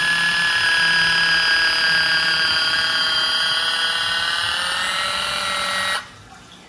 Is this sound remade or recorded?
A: recorded